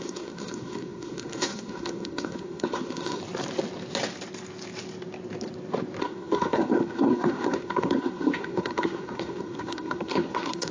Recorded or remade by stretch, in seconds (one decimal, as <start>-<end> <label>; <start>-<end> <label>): 0.0-3.2 remade; 3.2-6.0 recorded; 6.0-10.7 remade